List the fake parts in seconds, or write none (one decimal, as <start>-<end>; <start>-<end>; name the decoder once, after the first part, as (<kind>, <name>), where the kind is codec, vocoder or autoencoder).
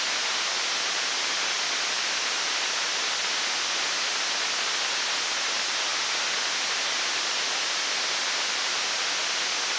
none